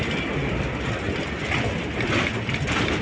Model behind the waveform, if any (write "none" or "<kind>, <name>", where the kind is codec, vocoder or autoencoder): none